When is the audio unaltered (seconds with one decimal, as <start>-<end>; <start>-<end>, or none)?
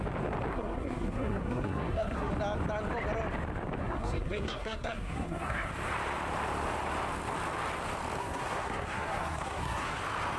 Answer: 0.0-0.5; 2.3-3.8; 5.7-8.2; 10.0-10.4